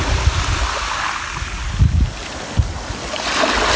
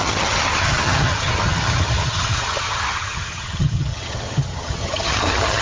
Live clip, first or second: first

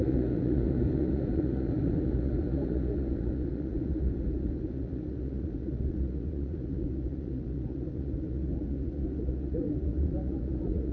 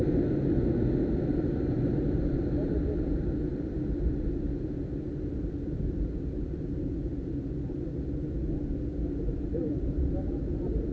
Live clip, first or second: second